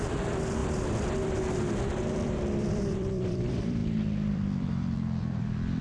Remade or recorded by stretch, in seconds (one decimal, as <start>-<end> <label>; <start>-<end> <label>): 0.0-0.6 remade; 0.6-2.1 recorded; 2.1-5.8 remade